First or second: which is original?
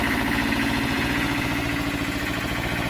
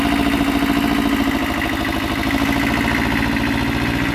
second